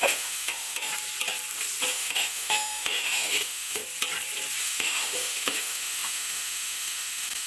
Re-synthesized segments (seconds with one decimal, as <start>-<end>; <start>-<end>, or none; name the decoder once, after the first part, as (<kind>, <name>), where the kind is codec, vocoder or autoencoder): 0.0-0.9 (autoencoder, DAC-VAE); 1.9-3.8; 4.6-7.5